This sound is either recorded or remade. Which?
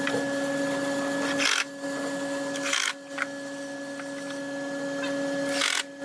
recorded